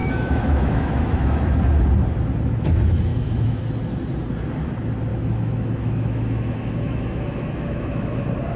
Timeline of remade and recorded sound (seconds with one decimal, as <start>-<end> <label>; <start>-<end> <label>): 0.0-1.6 remade; 1.6-3.1 recorded; 3.1-3.6 remade; 3.6-5.1 recorded; 5.1-8.2 remade; 8.2-8.6 recorded